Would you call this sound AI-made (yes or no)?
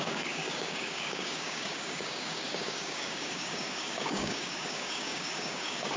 yes